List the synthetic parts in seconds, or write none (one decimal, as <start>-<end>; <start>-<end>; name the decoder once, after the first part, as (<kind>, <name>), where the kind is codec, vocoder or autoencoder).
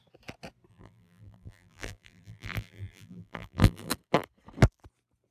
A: 0.7-3.9 (vocoder, BigVGAN v2)